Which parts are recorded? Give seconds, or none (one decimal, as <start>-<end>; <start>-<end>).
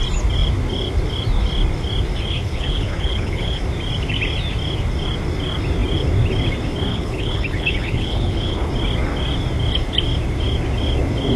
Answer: 0.0-2.4; 3.6-6.9; 8.7-11.4